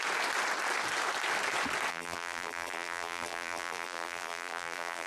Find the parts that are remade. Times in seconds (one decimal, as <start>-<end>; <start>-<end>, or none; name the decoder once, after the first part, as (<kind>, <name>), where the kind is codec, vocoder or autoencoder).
1.9-5.1 (vocoder, BigVGAN v2)